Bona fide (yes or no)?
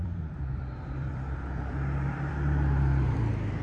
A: no